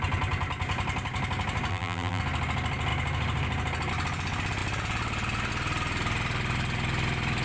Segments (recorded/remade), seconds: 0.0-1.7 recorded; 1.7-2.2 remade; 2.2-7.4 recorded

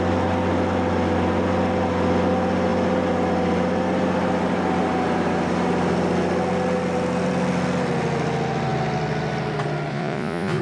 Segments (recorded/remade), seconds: 0.0-9.9 recorded; 9.9-10.6 remade

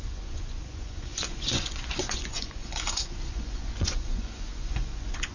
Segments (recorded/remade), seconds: 0.0-5.3 remade

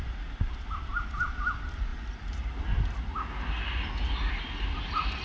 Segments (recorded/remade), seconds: 0.0-5.2 recorded

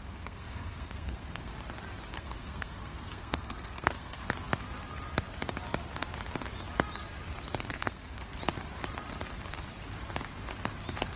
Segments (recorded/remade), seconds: 0.0-1.5 remade; 1.5-2.1 recorded; 2.1-4.2 remade; 4.2-7.6 recorded; 7.6-8.3 remade; 8.3-11.2 recorded

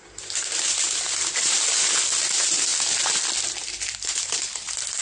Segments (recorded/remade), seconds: 0.0-5.0 recorded

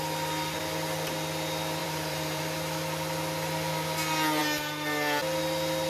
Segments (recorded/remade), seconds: 0.0-1.8 recorded; 1.8-2.4 remade; 2.4-5.9 recorded